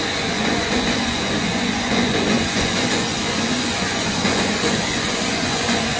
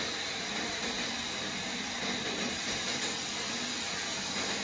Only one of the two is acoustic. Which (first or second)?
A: second